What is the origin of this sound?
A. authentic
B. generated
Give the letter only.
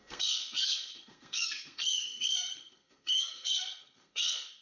B